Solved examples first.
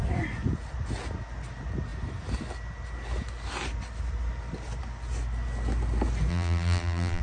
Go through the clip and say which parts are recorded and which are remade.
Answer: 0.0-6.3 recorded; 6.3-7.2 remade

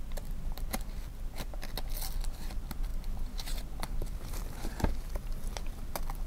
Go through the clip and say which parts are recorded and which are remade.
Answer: 0.0-1.1 recorded; 1.1-1.7 remade; 1.7-2.9 recorded; 2.9-4.7 remade; 4.7-6.3 recorded

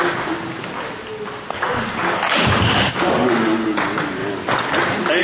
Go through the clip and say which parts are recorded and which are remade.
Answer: 0.0-5.2 recorded

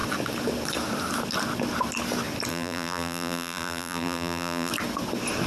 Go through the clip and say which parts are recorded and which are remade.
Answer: 0.0-2.5 recorded; 2.5-4.7 remade; 4.7-5.5 recorded

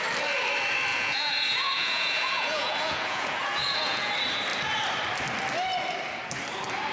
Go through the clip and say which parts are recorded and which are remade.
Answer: 0.0-0.9 recorded; 0.9-4.1 remade; 4.1-6.9 recorded

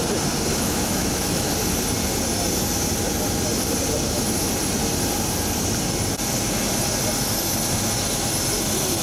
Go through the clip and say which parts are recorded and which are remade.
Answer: 0.0-0.5 recorded; 0.5-1.5 remade; 1.5-9.0 recorded

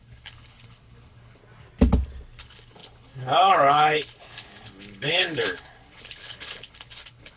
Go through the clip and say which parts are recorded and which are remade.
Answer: 0.0-1.4 remade; 1.4-2.4 recorded; 2.4-7.4 remade

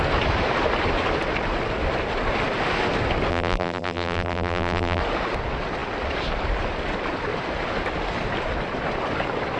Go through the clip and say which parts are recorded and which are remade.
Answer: 0.0-3.3 recorded; 3.3-5.0 remade; 5.0-9.6 recorded